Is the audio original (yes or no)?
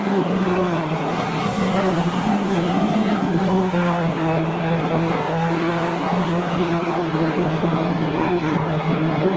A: no